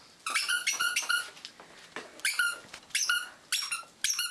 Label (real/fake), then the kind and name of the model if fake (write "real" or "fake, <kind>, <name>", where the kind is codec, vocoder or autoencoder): real